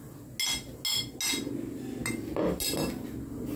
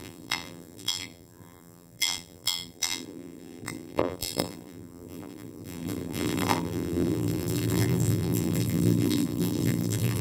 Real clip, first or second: first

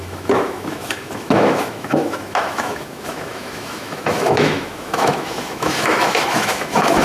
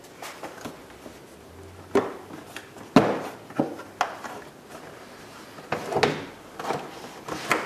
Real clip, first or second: second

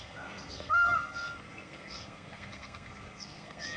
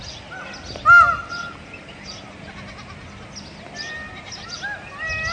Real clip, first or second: second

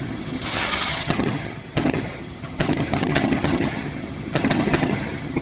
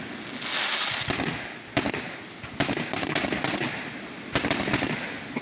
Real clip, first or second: second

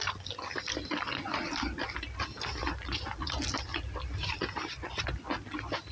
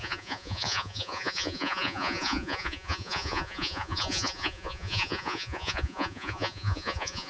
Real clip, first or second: first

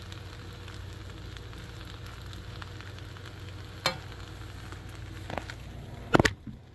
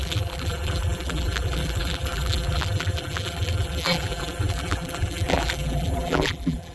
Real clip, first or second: first